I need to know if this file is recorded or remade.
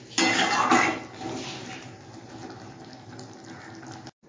recorded